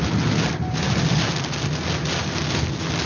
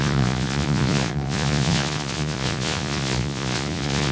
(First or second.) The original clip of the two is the first